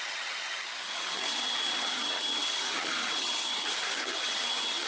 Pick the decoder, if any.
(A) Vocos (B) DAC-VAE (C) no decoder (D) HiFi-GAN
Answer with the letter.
D